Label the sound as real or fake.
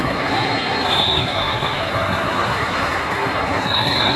fake